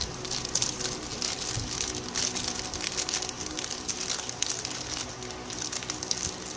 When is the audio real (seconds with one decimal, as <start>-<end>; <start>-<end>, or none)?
0.0-6.6